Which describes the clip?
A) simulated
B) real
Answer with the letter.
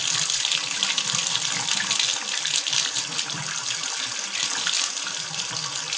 B